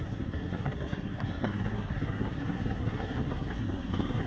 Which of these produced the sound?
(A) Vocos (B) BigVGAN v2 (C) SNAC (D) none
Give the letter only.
C